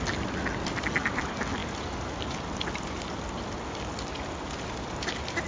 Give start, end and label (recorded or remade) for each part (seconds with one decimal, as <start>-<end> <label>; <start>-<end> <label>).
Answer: 0.0-5.5 recorded